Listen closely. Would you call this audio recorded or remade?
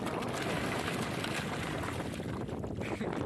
recorded